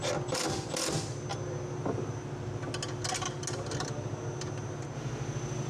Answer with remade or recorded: recorded